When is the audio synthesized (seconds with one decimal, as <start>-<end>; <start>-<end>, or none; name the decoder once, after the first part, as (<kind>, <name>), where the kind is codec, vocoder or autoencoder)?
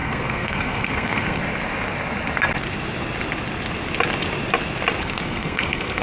0.0-1.4 (codec, SNAC); 5.0-6.0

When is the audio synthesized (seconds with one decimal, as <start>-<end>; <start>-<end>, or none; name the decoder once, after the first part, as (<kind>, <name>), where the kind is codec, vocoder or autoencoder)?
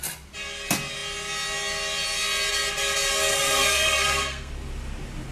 3.3-4.5 (codec, SNAC)